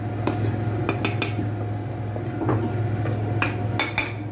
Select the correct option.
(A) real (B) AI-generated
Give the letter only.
A